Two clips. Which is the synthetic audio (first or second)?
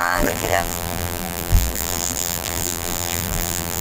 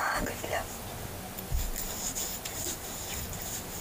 first